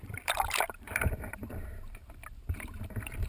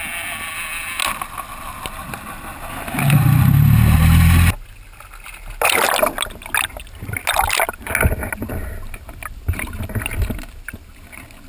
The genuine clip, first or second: second